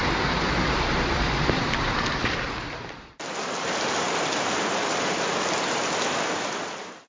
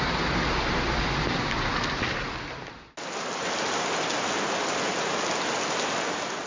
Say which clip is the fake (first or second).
first